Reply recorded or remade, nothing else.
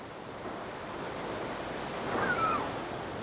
recorded